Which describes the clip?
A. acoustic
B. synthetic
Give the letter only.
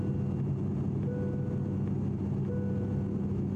A